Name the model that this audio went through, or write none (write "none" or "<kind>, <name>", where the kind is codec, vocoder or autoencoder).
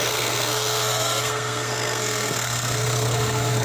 codec, SNAC